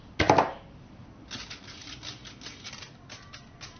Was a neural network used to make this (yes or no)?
no